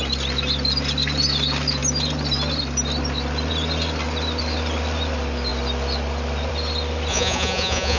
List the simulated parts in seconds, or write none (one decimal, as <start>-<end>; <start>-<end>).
7.1-8.0